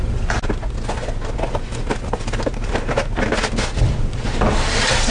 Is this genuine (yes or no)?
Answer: yes